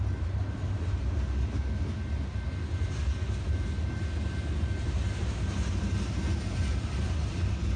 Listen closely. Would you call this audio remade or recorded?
recorded